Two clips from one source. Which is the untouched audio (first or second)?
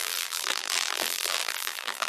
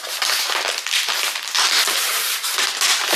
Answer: second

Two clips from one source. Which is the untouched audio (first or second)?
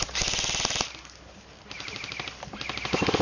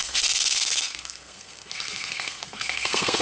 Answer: first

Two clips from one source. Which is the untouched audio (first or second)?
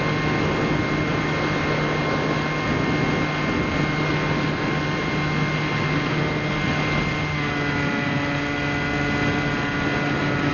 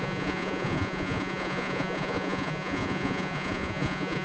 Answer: first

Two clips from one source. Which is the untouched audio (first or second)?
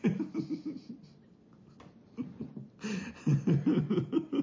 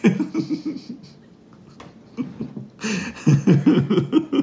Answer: second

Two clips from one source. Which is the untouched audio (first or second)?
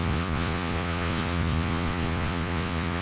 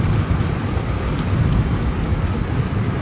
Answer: second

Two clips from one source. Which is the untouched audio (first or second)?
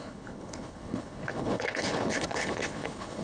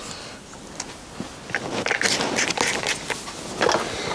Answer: second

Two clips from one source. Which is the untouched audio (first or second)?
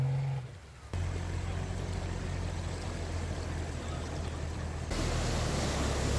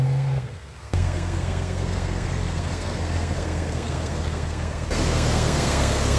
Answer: first